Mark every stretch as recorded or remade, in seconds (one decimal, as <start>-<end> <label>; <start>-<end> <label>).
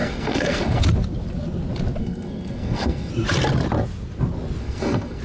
0.0-0.8 remade; 0.8-2.0 recorded; 2.0-3.1 remade; 3.1-4.6 recorded; 4.6-5.2 remade